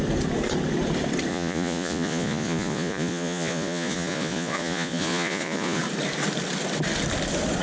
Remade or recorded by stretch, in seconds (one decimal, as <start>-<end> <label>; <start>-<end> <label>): 0.0-1.3 recorded; 1.3-5.8 remade; 5.8-7.6 recorded

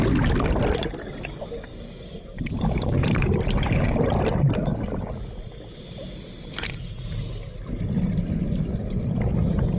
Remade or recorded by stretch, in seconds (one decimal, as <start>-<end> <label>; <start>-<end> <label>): 0.0-1.7 recorded; 1.7-4.2 remade; 4.2-9.8 recorded